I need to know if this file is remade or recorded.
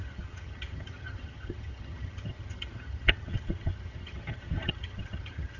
remade